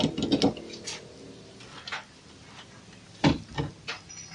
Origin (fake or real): real